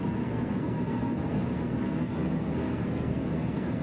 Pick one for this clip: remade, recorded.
remade